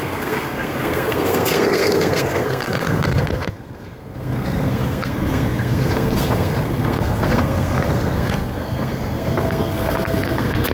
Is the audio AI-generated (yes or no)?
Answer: yes